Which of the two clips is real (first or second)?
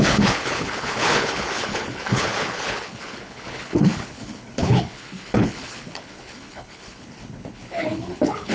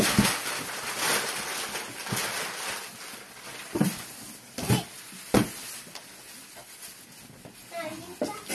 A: second